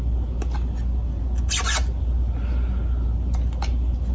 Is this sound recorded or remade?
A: recorded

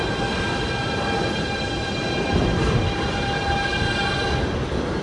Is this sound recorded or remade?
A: recorded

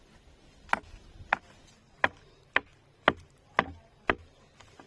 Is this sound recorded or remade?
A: recorded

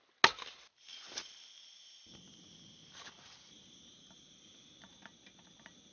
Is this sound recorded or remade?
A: recorded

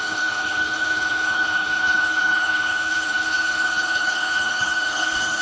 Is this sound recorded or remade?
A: remade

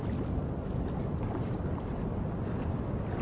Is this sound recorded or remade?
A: recorded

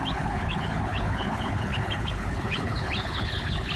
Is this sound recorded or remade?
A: remade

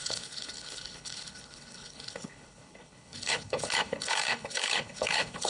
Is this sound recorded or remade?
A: remade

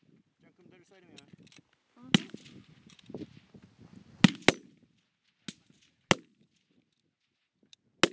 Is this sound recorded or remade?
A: recorded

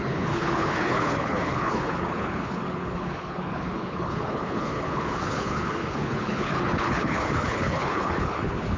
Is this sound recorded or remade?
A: remade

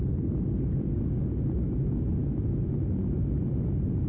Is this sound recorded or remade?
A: recorded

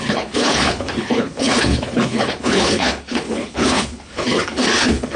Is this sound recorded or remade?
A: remade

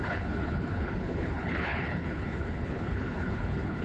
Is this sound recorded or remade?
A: remade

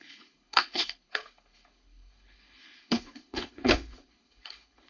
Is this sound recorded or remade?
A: remade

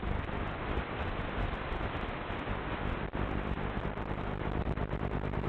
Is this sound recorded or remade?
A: recorded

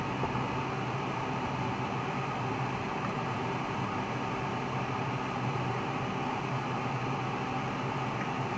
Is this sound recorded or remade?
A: recorded